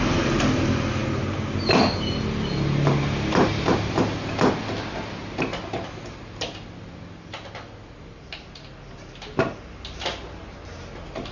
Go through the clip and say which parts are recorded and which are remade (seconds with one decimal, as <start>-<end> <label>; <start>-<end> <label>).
0.0-11.3 recorded